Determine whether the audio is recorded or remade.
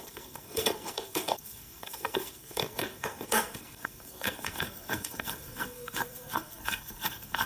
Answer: remade